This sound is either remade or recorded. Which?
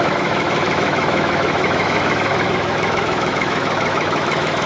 remade